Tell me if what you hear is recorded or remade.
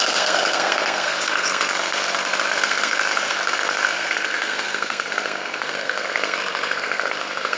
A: remade